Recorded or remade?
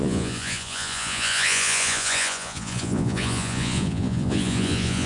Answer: remade